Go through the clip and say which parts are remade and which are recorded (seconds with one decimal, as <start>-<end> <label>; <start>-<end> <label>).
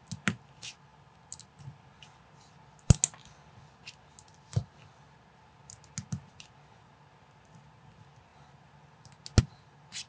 0.0-10.1 recorded